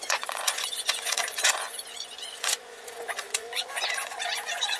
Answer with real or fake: fake